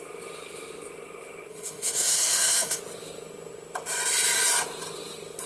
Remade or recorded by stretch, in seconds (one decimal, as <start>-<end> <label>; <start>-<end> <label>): 0.0-1.5 recorded; 1.5-2.8 remade; 2.8-5.5 recorded